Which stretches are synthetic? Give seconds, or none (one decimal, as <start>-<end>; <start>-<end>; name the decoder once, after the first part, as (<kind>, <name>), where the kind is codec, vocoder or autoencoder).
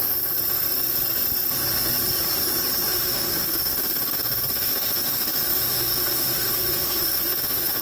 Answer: 2.9-7.8 (autoencoder, DAC-VAE)